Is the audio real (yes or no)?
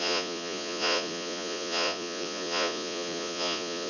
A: no